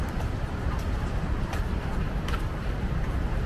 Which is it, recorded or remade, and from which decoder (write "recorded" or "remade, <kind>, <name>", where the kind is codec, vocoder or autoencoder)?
remade, vocoder, BigVGAN v2